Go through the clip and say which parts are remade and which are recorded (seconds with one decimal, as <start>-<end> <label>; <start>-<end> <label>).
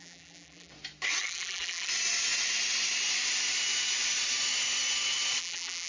0.0-0.7 remade; 0.7-1.2 recorded; 1.2-1.9 remade; 1.9-5.4 recorded; 5.4-5.9 remade